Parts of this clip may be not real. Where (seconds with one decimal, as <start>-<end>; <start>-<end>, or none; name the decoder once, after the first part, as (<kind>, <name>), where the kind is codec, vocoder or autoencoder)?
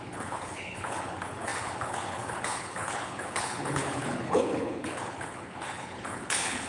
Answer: 0.0-6.7 (codec, HILCodec)